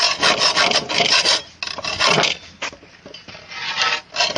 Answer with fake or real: real